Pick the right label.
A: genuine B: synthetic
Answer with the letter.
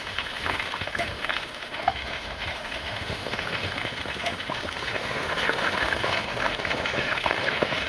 B